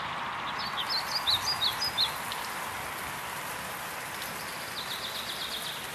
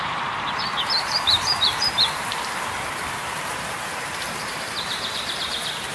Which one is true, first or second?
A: first